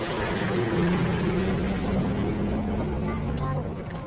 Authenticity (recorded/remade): recorded